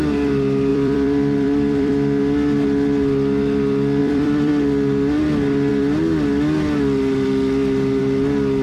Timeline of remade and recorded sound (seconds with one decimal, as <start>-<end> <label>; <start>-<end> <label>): 0.0-0.7 recorded; 0.7-1.9 remade; 1.9-4.0 recorded; 4.0-4.5 remade; 4.5-8.6 recorded